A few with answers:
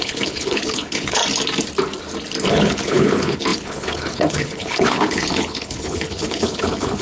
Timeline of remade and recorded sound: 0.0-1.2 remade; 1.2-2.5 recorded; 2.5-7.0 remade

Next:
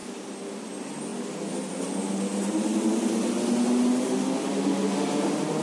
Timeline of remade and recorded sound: 0.0-5.6 recorded

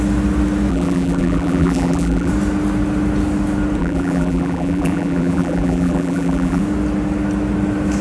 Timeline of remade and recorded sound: 0.0-0.7 recorded; 0.7-2.3 remade; 2.3-3.8 recorded; 3.8-6.6 remade; 6.6-8.0 recorded